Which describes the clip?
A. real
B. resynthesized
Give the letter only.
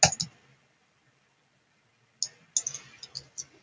A